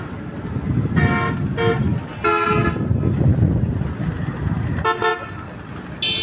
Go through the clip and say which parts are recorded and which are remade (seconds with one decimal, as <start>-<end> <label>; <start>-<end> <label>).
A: 0.0-6.2 recorded